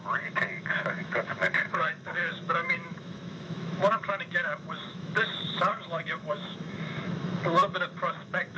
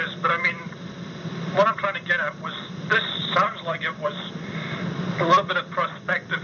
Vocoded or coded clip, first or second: first